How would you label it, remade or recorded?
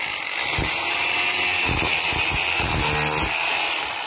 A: recorded